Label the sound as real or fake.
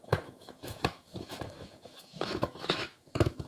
fake